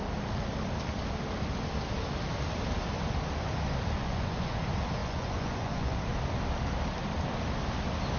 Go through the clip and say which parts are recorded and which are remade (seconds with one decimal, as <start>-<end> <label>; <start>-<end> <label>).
0.0-4.0 recorded; 4.0-4.6 remade; 4.6-5.0 recorded; 5.0-6.0 remade; 6.0-8.2 recorded